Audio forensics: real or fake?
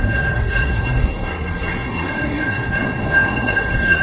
fake